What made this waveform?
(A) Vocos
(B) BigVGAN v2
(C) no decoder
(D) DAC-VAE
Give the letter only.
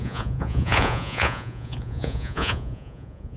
A